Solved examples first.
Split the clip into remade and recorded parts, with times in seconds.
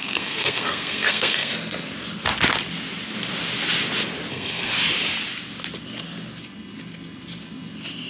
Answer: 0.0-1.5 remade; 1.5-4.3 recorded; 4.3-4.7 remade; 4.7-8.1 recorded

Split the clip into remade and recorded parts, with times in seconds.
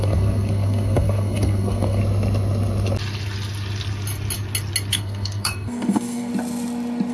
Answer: 0.0-2.0 remade; 2.0-4.9 recorded; 4.9-6.3 remade; 6.3-7.1 recorded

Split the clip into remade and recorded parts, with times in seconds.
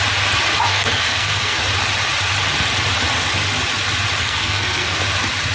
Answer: 0.0-0.7 recorded; 0.7-1.6 remade; 1.6-4.2 recorded; 4.2-5.0 remade; 5.0-5.5 recorded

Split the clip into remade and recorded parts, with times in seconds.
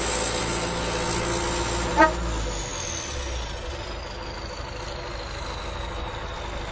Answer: 0.0-6.7 recorded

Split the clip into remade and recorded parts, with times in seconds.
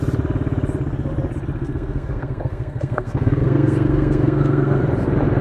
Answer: 0.0-1.6 recorded; 1.6-4.8 remade; 4.8-5.4 recorded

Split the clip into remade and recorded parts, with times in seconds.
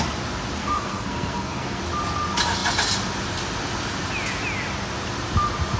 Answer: 0.0-0.6 recorded; 0.6-1.8 remade; 1.8-5.8 recorded